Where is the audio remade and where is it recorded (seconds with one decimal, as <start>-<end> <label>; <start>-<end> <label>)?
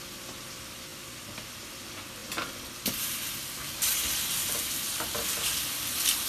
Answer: 0.0-6.3 recorded